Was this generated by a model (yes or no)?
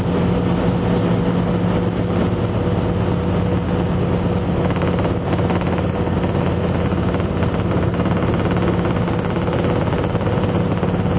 no